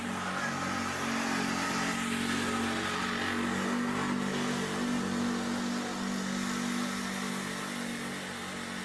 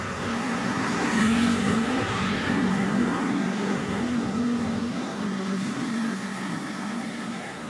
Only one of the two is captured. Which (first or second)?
first